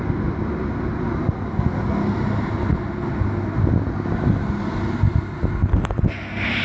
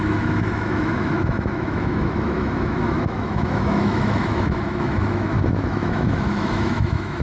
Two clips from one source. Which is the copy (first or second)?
second